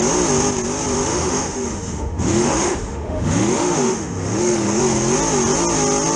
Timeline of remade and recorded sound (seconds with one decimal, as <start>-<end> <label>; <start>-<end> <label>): 0.0-1.1 recorded; 1.1-4.8 remade; 4.8-6.2 recorded